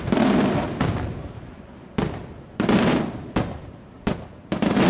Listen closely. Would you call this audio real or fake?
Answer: fake